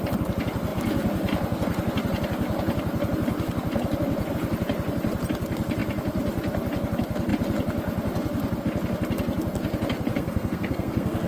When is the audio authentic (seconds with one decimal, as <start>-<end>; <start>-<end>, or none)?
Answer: 0.0-10.1

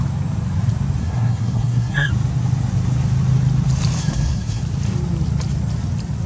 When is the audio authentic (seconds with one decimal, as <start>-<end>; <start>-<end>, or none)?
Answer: 0.0-1.0; 2.1-4.0; 4.6-6.3

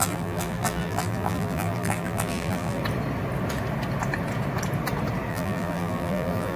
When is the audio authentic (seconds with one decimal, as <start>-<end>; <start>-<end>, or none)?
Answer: 2.8-5.3